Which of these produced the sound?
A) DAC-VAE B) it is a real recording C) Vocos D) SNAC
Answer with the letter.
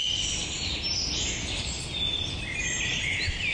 B